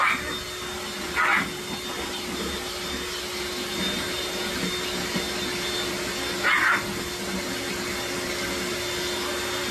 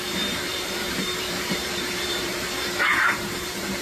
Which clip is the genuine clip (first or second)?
first